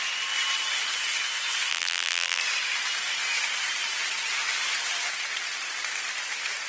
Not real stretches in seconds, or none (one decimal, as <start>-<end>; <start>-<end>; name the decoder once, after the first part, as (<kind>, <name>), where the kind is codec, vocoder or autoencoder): 1.7-2.4 (vocoder, BigVGAN v2)